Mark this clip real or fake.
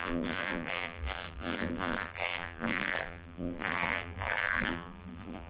fake